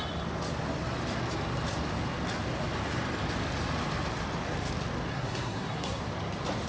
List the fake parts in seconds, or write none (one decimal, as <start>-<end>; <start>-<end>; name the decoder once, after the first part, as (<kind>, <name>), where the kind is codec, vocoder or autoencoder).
5.1-6.0 (codec, SNAC)